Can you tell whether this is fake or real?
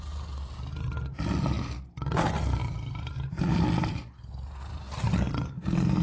real